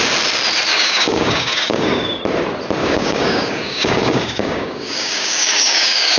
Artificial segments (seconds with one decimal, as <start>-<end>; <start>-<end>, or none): 0.7-2.2; 2.8-6.2